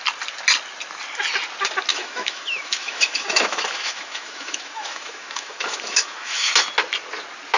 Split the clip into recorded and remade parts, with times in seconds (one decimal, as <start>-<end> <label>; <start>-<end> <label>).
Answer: 0.0-1.9 recorded; 1.9-6.5 remade; 6.5-7.6 recorded